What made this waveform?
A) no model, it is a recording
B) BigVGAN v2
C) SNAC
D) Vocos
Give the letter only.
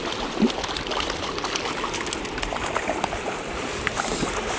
B